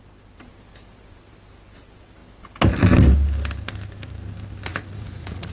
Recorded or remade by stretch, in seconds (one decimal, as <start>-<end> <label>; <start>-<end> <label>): 0.0-4.7 recorded; 4.7-5.5 remade